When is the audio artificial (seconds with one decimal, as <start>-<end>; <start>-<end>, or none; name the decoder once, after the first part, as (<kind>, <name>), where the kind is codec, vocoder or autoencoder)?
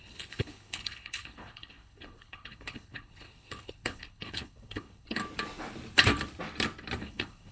0.0-5.2 (codec, HILCodec); 7.0-7.5